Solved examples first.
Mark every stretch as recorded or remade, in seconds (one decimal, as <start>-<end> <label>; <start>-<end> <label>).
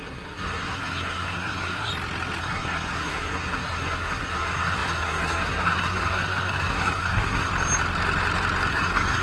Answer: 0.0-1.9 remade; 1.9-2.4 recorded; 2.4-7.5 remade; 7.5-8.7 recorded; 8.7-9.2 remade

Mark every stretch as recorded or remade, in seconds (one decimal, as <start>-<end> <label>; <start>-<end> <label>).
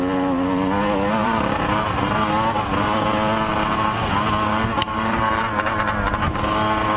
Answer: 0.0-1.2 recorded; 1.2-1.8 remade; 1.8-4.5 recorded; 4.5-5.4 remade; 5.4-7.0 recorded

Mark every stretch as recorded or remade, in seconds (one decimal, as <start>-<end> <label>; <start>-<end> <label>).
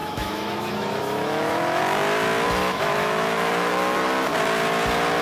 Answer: 0.0-1.8 remade; 1.8-2.6 recorded; 2.6-3.7 remade; 3.7-5.2 recorded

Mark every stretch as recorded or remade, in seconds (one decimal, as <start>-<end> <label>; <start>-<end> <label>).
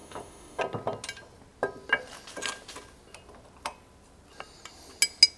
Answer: 0.0-0.6 remade; 0.6-5.4 recorded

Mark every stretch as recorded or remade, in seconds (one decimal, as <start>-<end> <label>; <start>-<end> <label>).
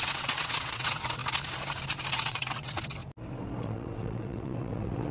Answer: 0.0-1.2 remade; 1.2-2.1 recorded; 2.1-3.0 remade; 3.0-3.6 recorded; 3.6-5.1 remade